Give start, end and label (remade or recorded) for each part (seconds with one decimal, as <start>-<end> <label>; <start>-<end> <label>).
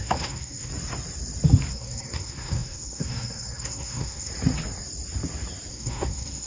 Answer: 0.0-0.7 remade; 0.7-1.7 recorded; 1.7-4.3 remade; 4.3-5.7 recorded; 5.7-6.5 remade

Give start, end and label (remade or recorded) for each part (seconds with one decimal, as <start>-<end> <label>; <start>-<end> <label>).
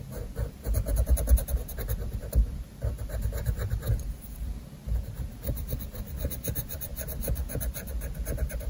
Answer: 0.0-8.7 recorded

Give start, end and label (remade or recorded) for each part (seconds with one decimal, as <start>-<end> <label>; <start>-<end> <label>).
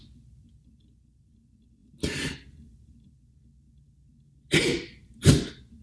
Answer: 0.0-5.8 recorded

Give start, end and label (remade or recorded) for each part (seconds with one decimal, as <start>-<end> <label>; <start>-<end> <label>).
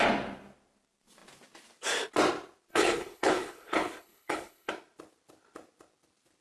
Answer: 0.0-2.7 recorded; 2.7-4.7 remade; 4.7-6.4 recorded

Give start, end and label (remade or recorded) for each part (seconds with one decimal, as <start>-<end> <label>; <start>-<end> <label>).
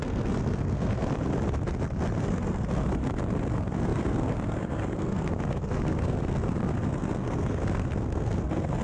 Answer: 0.0-1.0 remade; 1.0-2.2 recorded; 2.2-3.0 remade; 3.0-3.5 recorded; 3.5-8.8 remade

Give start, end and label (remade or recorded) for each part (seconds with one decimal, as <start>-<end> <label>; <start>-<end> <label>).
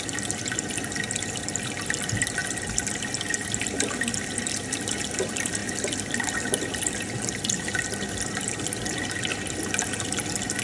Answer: 0.0-10.6 recorded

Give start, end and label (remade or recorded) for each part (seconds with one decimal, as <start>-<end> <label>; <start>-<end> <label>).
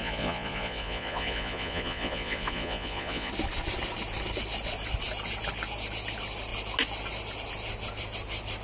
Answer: 0.0-3.3 remade; 3.3-8.6 recorded